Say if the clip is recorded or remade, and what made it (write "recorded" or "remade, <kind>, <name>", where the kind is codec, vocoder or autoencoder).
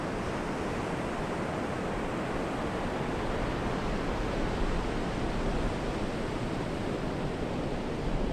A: recorded